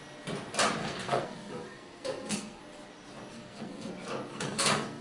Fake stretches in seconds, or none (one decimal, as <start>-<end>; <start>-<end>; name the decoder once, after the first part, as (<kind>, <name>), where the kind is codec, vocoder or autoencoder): 0.8-2.6 (codec, SNAC); 3.3-3.9; 4.3-5.0